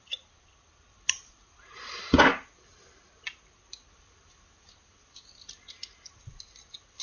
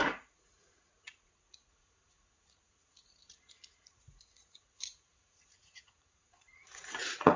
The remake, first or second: second